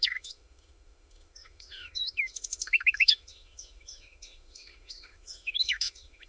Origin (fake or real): fake